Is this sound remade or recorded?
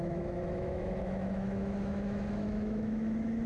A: remade